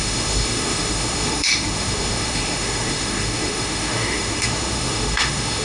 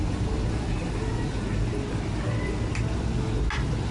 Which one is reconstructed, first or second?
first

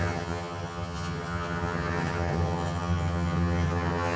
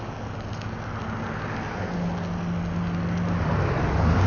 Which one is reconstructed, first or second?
first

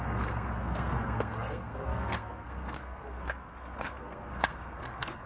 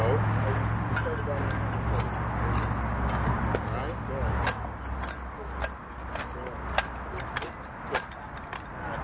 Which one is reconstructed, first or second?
first